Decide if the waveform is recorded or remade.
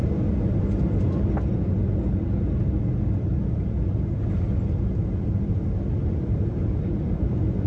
recorded